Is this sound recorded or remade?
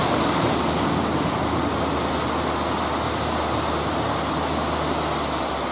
recorded